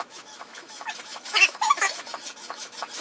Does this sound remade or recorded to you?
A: remade